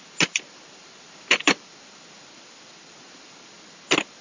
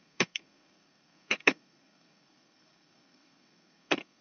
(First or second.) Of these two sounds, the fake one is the second